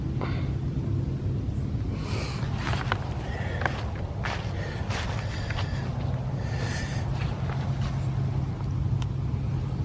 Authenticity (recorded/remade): recorded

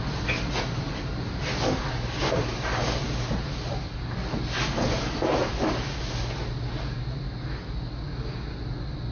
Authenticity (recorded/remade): recorded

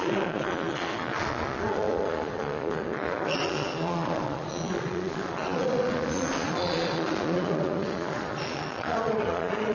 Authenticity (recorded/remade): remade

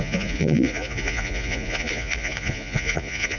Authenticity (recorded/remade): remade